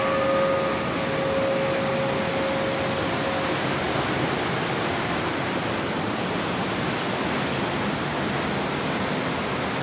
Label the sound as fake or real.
real